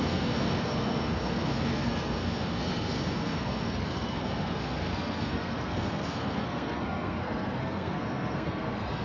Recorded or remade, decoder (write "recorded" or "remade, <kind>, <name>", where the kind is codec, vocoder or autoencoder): remade, codec, SNAC